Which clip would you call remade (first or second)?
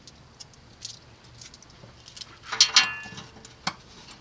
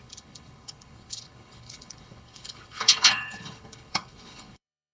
second